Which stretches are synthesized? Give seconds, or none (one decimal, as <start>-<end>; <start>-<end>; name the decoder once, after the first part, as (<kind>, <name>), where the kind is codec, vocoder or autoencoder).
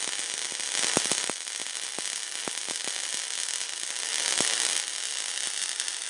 none